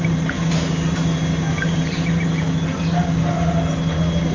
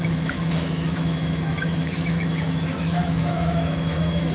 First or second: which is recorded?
first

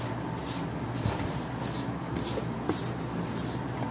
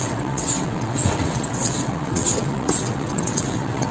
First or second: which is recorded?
first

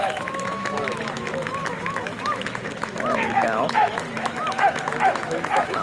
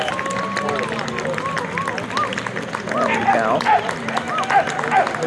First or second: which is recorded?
second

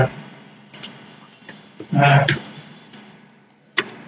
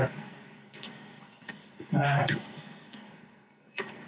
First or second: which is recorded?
first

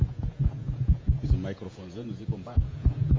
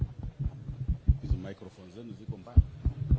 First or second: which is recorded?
second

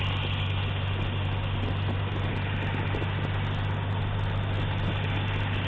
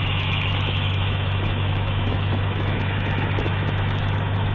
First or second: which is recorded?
first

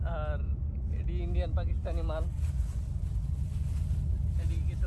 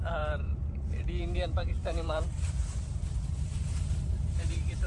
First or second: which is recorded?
first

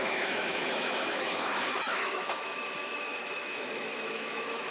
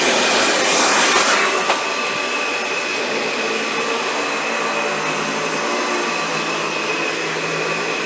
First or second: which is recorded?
second